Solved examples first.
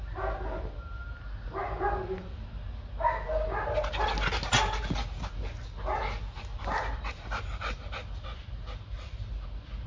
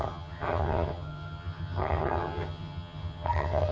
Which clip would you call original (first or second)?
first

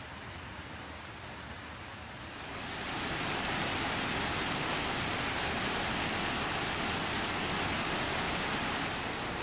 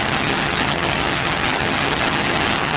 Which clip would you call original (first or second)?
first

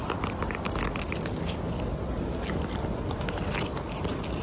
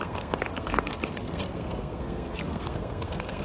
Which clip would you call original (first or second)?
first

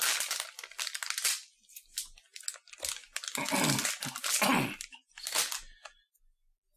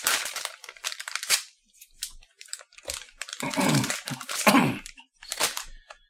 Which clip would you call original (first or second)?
first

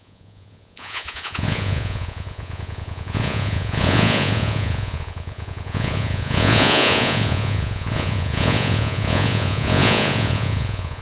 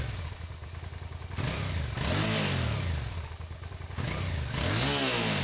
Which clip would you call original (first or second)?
second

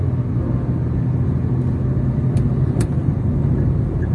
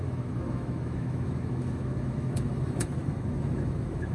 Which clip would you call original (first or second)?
first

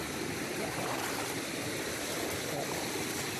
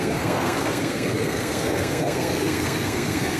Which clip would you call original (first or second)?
first